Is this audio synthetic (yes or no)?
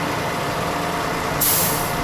no